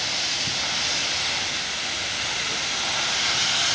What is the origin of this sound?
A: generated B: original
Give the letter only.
B